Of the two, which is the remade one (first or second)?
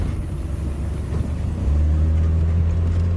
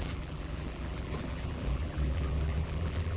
second